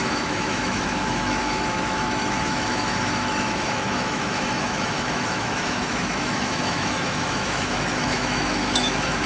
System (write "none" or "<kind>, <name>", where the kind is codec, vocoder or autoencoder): autoencoder, DAC-VAE